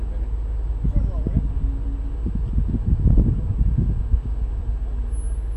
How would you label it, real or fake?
real